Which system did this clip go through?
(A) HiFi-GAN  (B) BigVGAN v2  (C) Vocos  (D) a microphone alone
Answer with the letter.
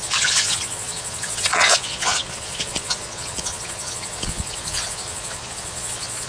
C